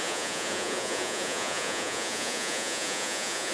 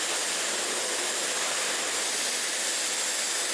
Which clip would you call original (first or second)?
second